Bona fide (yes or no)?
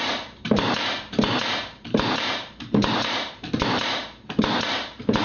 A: no